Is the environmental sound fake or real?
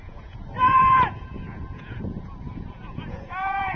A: fake